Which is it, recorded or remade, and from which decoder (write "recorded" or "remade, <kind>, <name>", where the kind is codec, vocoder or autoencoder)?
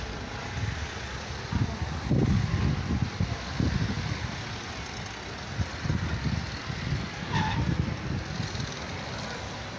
recorded